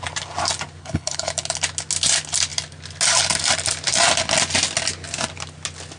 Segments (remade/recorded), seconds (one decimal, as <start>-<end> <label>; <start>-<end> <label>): 0.0-0.8 recorded; 0.8-1.3 remade; 1.3-6.0 recorded